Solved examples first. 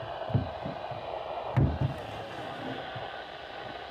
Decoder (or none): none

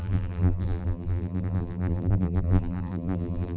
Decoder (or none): vocoder, BigVGAN v2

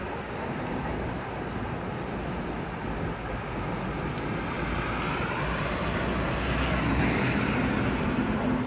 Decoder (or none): none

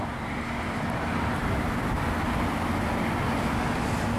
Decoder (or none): none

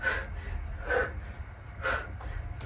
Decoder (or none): none